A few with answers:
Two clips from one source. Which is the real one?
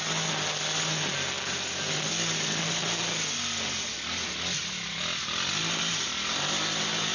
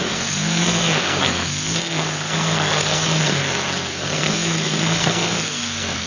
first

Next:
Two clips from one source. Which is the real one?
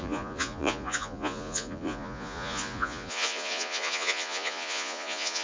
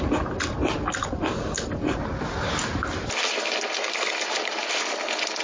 second